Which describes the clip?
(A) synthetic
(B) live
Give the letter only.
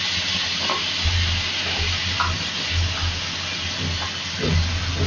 B